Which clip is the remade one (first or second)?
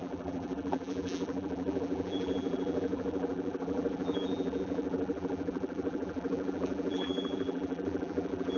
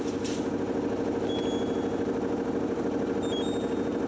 first